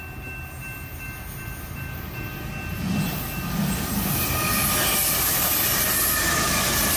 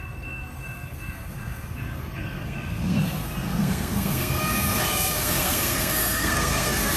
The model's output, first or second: second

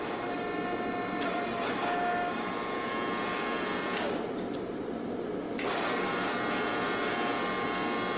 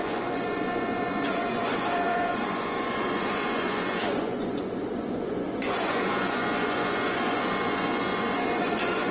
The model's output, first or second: second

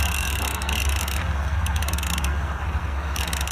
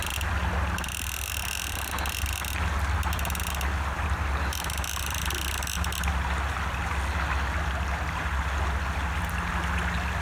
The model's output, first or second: first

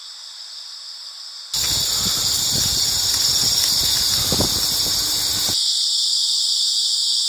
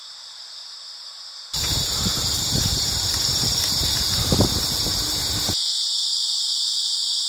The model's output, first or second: second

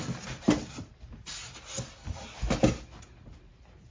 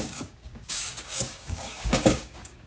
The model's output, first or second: second